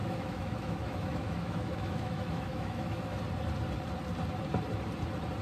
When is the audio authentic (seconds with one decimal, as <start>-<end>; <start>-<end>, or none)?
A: 3.2-5.4